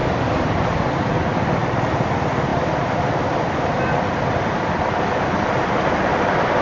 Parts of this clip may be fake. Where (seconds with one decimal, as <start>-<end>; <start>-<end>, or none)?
none